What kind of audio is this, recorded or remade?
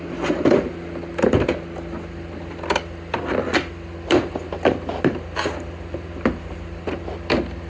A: recorded